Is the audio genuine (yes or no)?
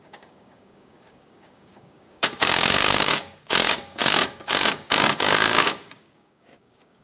no